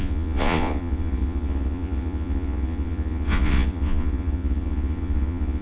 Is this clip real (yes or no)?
no